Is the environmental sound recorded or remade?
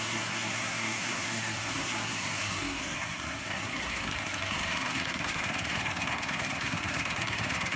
remade